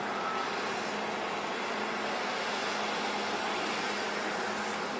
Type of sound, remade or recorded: recorded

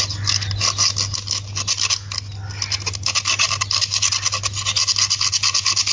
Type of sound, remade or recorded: recorded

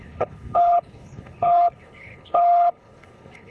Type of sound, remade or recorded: remade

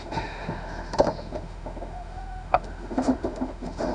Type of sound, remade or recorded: remade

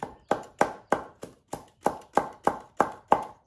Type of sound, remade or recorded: recorded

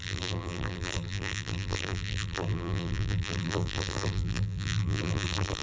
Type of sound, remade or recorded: remade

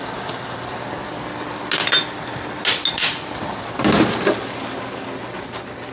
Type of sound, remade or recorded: recorded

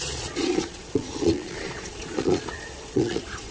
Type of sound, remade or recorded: remade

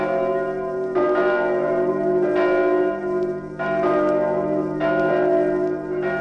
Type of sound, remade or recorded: recorded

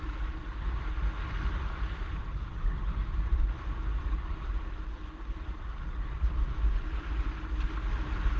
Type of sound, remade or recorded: recorded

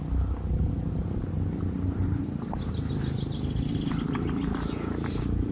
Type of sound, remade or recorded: recorded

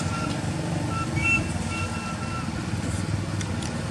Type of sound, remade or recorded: recorded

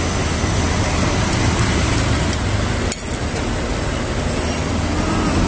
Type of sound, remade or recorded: recorded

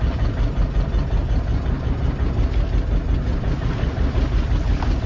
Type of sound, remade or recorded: recorded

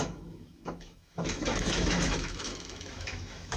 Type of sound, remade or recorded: remade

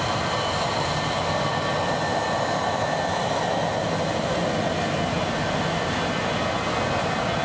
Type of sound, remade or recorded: recorded